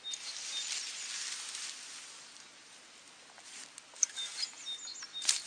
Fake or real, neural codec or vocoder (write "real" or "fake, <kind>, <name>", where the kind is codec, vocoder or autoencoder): real